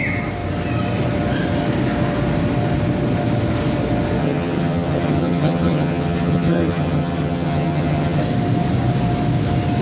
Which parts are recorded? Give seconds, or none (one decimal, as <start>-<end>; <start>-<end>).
0.0-4.2; 8.2-9.8